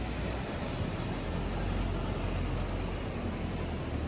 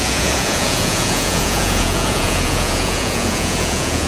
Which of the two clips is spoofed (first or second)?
second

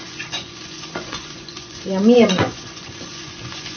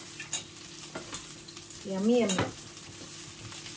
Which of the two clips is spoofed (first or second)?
first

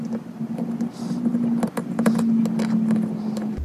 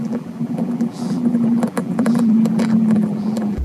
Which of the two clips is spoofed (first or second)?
second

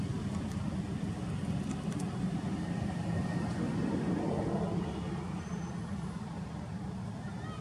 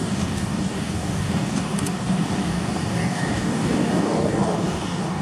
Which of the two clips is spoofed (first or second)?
second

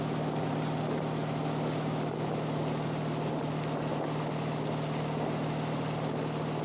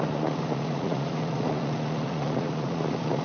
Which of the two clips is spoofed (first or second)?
second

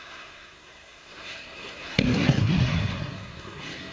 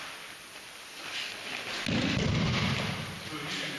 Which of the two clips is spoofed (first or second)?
first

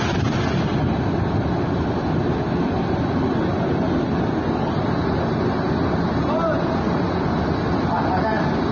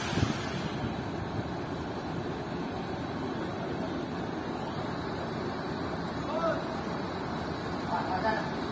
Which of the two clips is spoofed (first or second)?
second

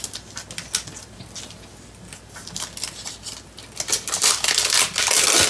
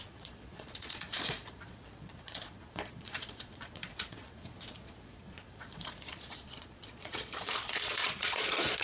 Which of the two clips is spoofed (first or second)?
second